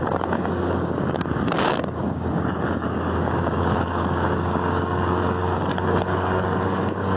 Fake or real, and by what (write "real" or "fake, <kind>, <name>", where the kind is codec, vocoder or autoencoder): fake, codec, DAC